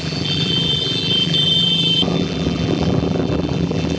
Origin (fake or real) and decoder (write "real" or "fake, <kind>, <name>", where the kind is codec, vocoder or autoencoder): fake, vocoder, BigVGAN v2